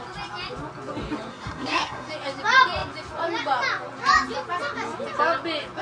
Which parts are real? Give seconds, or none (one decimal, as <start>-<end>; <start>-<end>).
0.0-1.3; 2.1-5.8